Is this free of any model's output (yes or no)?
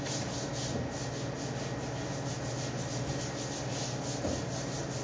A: yes